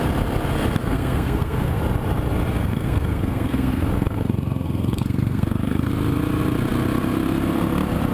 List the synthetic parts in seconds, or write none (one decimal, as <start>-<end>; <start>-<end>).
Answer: 0.8-1.8; 2.6-5.9